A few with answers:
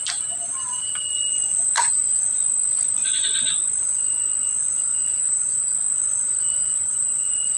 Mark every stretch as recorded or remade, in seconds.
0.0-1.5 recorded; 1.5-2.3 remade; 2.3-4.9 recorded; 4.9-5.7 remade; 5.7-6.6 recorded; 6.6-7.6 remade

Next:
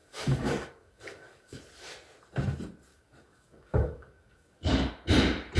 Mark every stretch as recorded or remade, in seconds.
0.0-1.6 remade; 1.6-2.9 recorded; 2.9-4.9 remade; 4.9-5.6 recorded

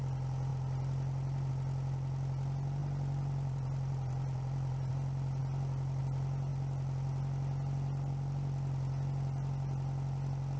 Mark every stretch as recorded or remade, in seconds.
0.0-2.8 recorded; 2.8-4.9 remade; 4.9-10.6 recorded